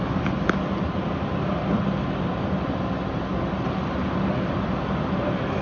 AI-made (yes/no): no